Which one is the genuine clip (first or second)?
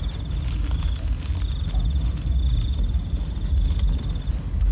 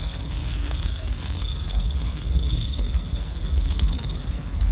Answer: first